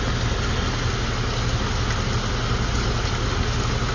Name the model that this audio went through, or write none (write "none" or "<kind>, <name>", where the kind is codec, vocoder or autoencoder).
none